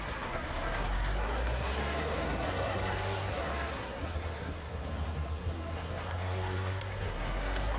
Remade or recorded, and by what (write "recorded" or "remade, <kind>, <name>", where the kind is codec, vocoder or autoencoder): remade, codec, SNAC